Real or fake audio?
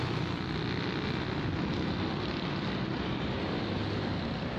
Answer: real